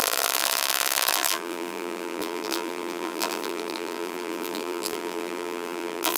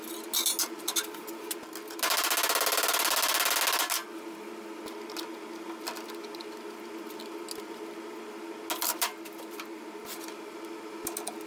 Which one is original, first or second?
second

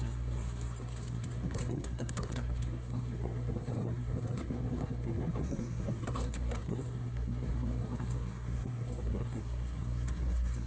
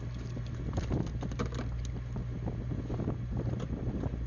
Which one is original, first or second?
second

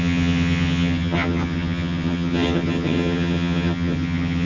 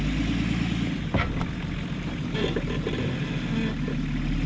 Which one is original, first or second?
second